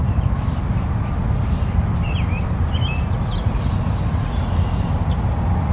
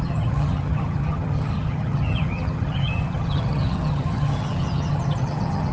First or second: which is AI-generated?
second